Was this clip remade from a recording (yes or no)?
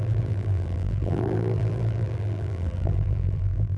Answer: yes